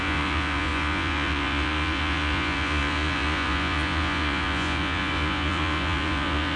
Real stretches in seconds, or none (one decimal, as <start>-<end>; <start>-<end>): none